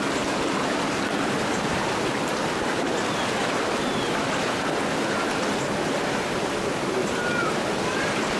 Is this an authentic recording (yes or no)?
yes